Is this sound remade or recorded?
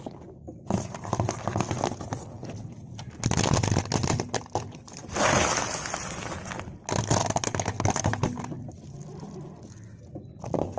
recorded